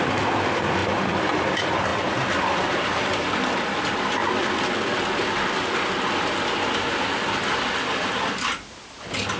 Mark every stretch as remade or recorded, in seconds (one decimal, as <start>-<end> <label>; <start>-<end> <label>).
0.0-9.4 recorded